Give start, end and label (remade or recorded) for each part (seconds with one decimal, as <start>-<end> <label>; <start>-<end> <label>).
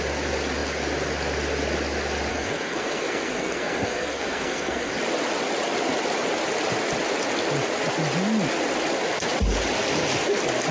0.0-2.3 recorded; 2.3-4.9 remade; 4.9-10.7 recorded